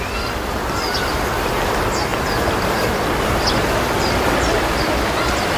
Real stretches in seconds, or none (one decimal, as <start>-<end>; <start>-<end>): 0.0-5.6